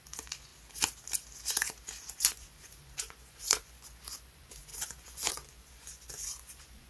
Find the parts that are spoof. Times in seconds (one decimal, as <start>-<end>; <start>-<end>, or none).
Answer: 0.0-0.5; 2.1-6.9